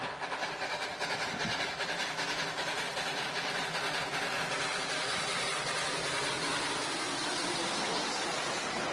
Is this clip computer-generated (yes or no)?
no